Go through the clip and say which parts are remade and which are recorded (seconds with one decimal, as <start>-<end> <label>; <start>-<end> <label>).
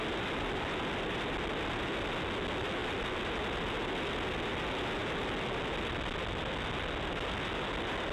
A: 0.0-8.1 recorded